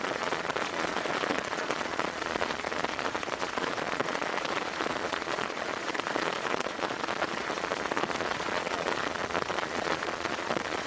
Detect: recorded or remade remade